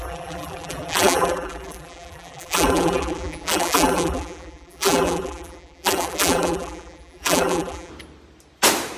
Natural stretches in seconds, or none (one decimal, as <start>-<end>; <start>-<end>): 7.9-9.0